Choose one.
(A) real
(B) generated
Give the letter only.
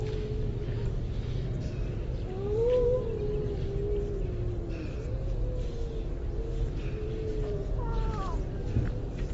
A